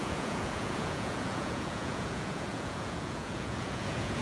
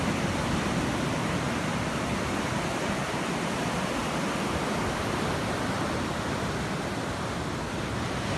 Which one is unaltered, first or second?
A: second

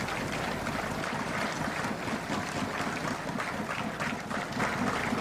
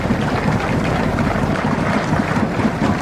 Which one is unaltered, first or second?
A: first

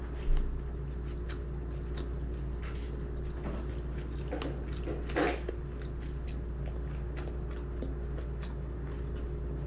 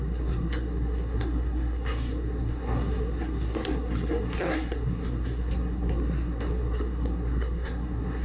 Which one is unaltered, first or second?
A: first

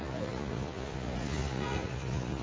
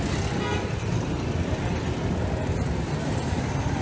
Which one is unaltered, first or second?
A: second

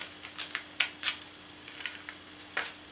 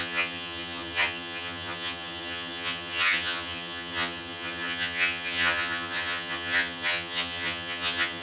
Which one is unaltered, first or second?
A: first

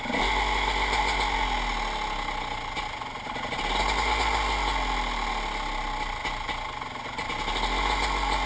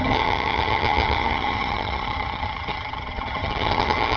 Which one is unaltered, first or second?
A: first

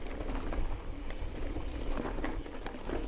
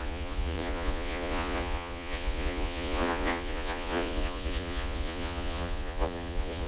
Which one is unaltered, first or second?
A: first